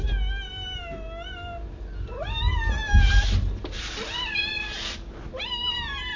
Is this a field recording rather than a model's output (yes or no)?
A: yes